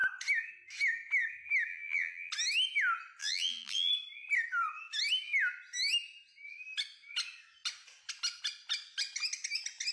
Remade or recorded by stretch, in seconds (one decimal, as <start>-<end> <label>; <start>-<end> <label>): 0.0-1.7 recorded; 1.7-2.3 remade; 2.3-3.2 recorded; 3.2-3.9 remade; 3.9-9.9 recorded